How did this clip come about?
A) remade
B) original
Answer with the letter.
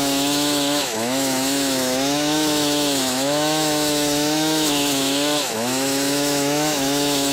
A